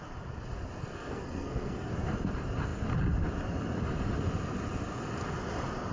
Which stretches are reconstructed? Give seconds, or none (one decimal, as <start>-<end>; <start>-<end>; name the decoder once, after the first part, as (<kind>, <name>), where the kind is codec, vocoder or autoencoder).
0.9-1.9 (codec, SNAC)